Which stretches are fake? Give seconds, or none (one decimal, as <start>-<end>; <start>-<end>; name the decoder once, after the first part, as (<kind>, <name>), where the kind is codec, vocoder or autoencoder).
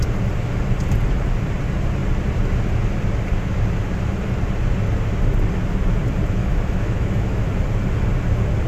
6.4-7.5 (autoencoder, DAC-VAE)